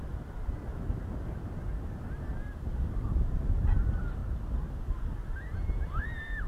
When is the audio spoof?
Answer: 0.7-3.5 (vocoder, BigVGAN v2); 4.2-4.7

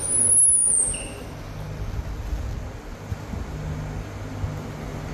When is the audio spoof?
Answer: none

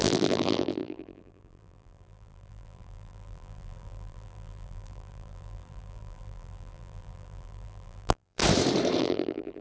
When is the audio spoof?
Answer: 0.0-8.4 (vocoder, BigVGAN v2); 9.0-9.6

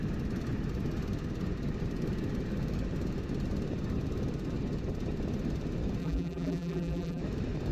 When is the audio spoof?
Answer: 6.0-7.2 (vocoder, BigVGAN v2)

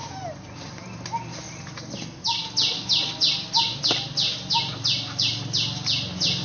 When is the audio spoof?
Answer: none